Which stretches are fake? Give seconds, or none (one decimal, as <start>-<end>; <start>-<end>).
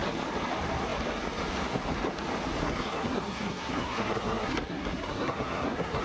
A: 2.6-6.0